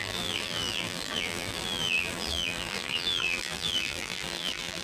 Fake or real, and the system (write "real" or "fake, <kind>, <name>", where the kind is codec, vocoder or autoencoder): fake, vocoder, BigVGAN v2